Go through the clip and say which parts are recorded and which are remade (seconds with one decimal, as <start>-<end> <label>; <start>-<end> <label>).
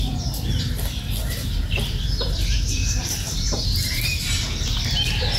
0.0-1.2 recorded; 1.2-4.4 remade; 4.4-5.4 recorded